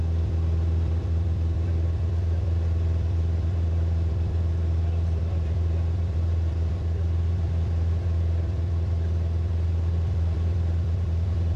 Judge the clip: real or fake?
fake